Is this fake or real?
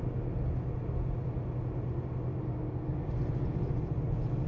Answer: real